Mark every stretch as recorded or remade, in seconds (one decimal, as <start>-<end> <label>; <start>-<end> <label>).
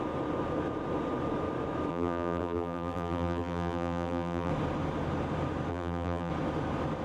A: 0.0-1.9 recorded; 1.9-4.5 remade; 4.5-5.7 recorded; 5.7-6.3 remade; 6.3-7.0 recorded